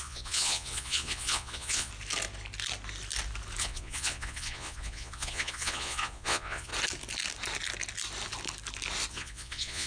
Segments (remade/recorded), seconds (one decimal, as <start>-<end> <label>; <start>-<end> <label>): 0.0-1.9 remade; 1.9-3.6 recorded; 3.6-6.7 remade; 6.7-9.1 recorded; 9.1-9.9 remade